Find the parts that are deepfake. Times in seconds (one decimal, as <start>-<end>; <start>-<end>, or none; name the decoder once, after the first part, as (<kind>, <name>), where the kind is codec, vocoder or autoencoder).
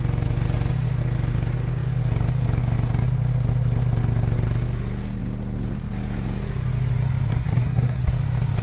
7.3-8.1 (codec, SNAC)